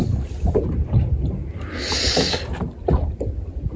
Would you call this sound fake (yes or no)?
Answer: no